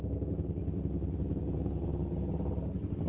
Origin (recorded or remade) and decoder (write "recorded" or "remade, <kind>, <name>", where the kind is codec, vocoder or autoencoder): recorded